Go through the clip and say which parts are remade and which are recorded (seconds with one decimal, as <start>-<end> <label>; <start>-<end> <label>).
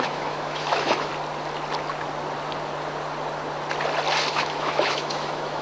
0.0-1.1 remade; 1.1-4.3 recorded; 4.3-5.6 remade